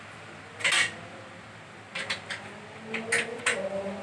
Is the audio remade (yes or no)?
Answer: no